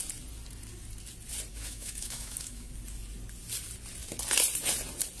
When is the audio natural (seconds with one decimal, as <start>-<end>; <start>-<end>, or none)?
0.0-1.5; 2.7-5.2